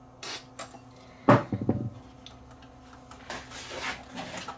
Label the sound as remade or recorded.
recorded